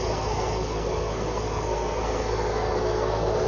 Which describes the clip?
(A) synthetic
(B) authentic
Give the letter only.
A